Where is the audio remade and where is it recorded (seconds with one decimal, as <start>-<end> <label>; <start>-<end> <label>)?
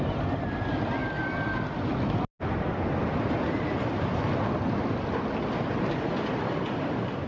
0.0-7.3 recorded